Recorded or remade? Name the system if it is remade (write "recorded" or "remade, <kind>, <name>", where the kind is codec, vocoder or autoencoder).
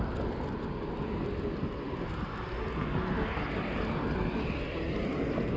recorded